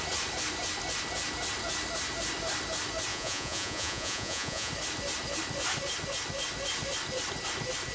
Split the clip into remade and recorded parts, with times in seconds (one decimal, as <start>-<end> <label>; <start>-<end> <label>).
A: 0.0-3.1 recorded; 3.1-4.7 remade; 4.7-7.9 recorded